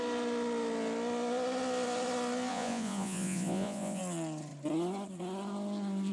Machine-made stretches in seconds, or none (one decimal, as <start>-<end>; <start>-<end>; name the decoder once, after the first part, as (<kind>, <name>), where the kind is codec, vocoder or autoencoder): 2.5-4.0 (vocoder, Vocos)